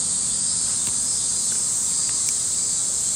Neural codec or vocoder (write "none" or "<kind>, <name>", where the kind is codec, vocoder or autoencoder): none